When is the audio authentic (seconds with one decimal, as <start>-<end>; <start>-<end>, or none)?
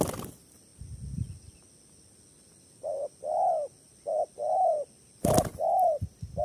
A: 0.0-6.4